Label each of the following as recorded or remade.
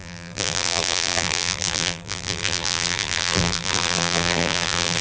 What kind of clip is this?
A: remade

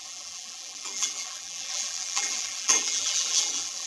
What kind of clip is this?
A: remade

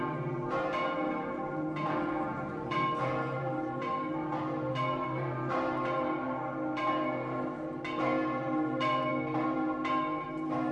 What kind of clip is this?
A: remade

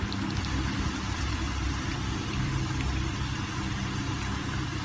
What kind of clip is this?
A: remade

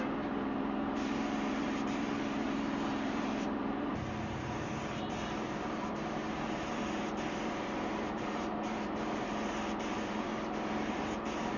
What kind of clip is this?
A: remade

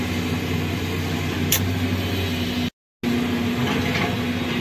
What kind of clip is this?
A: recorded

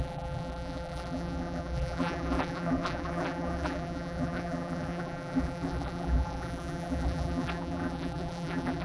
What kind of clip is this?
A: remade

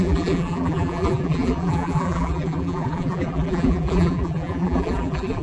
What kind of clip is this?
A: remade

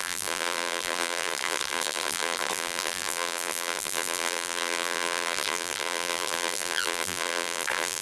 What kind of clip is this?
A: remade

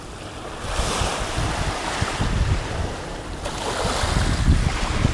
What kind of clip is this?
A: recorded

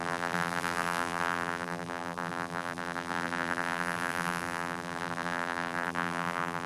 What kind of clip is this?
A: remade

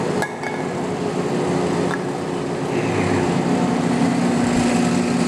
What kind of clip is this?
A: recorded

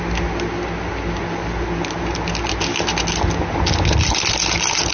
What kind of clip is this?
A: recorded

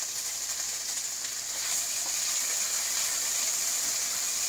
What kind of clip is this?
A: remade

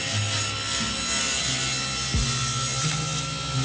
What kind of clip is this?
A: recorded